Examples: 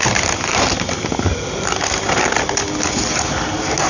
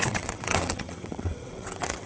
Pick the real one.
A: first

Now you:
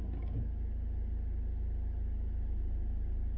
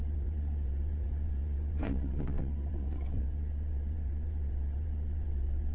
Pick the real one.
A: first